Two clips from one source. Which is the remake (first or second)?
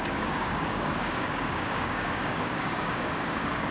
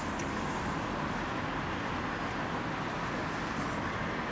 first